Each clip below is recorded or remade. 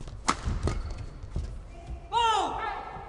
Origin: recorded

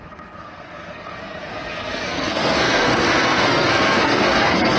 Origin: remade